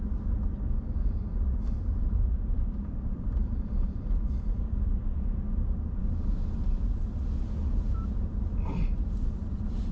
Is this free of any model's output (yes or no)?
no